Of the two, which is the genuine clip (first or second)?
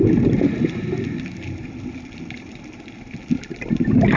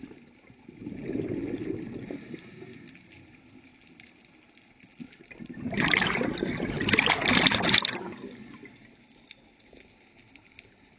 second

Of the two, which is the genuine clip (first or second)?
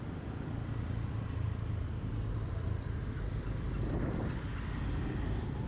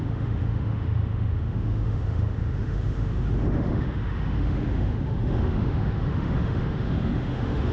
first